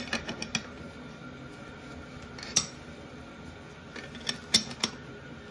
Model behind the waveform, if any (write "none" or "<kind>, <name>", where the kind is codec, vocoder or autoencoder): none